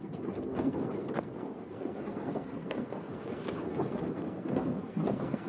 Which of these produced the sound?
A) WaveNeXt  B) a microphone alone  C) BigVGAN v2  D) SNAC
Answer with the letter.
D